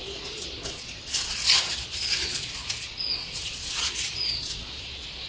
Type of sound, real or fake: fake